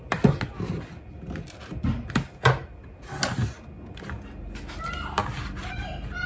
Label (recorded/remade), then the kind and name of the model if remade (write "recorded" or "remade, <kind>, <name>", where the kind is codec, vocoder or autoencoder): recorded